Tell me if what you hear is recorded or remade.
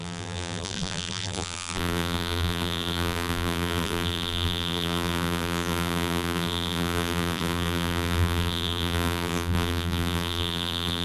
remade